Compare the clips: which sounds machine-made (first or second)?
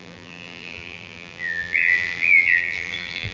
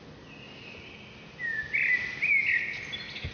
first